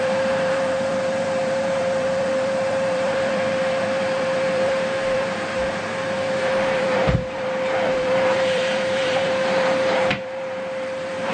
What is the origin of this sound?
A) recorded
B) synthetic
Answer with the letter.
B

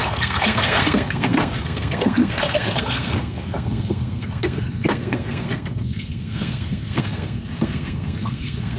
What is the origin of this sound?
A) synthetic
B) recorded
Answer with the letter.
A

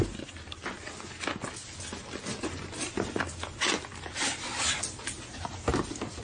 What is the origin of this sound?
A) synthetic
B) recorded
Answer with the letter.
B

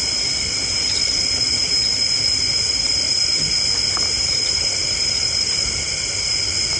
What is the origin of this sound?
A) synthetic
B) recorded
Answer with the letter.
B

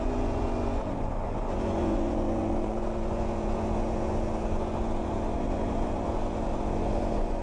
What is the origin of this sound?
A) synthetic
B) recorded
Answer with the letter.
A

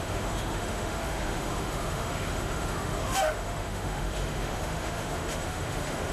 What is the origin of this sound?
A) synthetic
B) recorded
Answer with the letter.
A